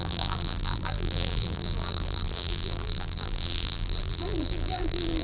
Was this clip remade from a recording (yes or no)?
yes